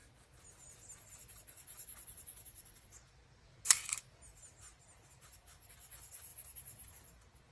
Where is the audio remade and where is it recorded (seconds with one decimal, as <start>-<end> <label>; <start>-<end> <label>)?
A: 0.0-7.5 recorded